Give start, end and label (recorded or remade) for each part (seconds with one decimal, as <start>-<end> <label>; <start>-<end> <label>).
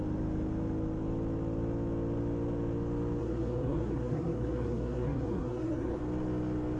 0.0-3.2 recorded; 3.2-6.0 remade; 6.0-6.8 recorded